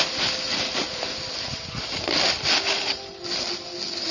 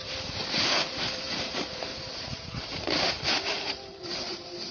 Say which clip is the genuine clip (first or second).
first